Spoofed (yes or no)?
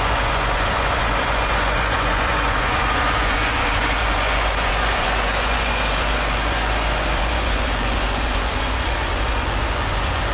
yes